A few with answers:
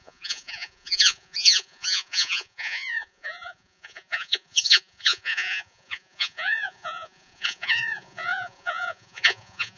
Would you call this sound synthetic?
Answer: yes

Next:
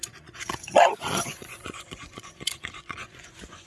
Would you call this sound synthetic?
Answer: yes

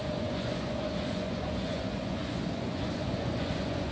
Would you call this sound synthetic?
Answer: yes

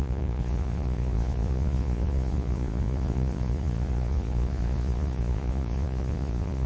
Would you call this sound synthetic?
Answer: yes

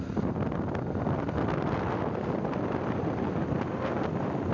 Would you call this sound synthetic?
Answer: no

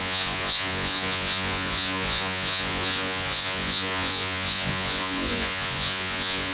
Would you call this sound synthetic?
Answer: yes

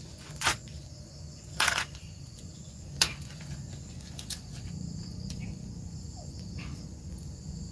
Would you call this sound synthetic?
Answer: yes